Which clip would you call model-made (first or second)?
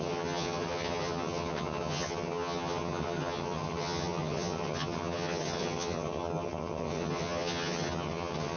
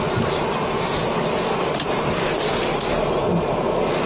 first